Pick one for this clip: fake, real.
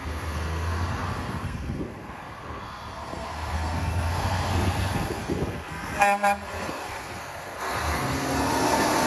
fake